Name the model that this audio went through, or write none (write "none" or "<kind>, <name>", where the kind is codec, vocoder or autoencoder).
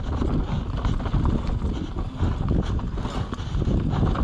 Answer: none